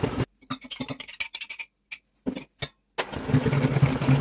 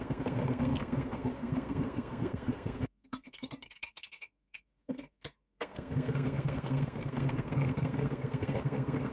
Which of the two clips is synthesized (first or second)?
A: second